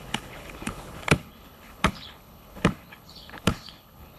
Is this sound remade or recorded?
remade